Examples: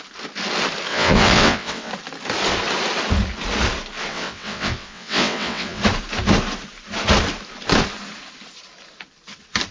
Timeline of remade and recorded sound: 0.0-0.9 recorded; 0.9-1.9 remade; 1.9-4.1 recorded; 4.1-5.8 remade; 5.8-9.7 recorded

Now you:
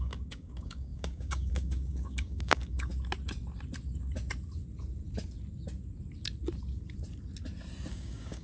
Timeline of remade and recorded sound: 0.0-2.9 remade; 2.9-7.9 recorded; 7.9-8.4 remade

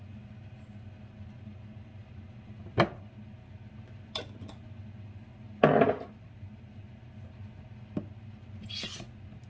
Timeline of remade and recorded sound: 0.0-9.5 recorded

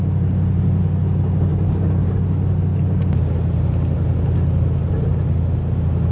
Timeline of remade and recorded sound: 0.0-6.1 recorded

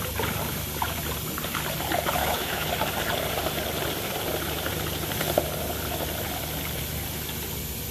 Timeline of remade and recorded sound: 0.0-2.2 recorded; 2.2-2.7 remade; 2.7-7.9 recorded

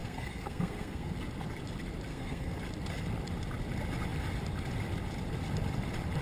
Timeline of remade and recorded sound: 0.0-1.1 remade; 1.1-2.1 recorded; 2.1-2.6 remade; 2.6-6.2 recorded

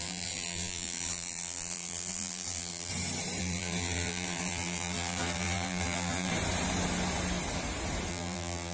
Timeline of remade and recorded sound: 0.0-2.9 remade; 2.9-3.4 recorded; 3.4-6.3 remade; 6.3-8.1 recorded; 8.1-8.7 remade

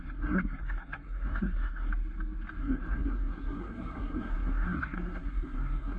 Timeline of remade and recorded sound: 0.0-1.9 remade; 1.9-2.6 recorded; 2.6-6.0 remade